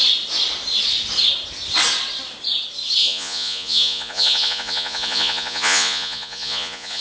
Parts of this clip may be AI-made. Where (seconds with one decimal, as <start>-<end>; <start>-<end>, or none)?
3.0-7.0